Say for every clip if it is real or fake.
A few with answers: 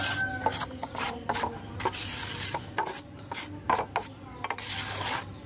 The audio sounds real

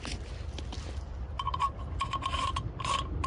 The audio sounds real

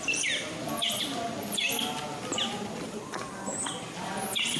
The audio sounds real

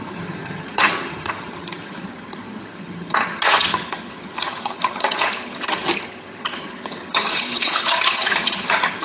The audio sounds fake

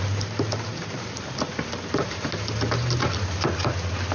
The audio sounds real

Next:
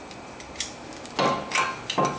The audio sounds real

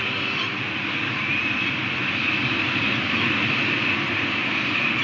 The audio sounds real